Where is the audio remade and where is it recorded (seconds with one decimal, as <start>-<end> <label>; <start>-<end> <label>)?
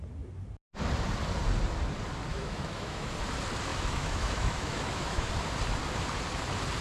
0.0-2.3 recorded; 2.3-3.1 remade; 3.1-3.7 recorded; 3.7-5.3 remade; 5.3-6.8 recorded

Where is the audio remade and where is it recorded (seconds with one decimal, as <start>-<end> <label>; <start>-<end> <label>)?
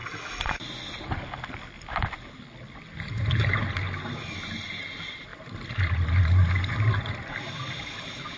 0.0-8.4 recorded